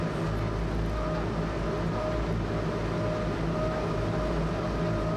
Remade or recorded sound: recorded